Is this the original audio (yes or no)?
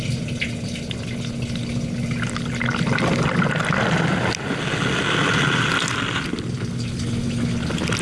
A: yes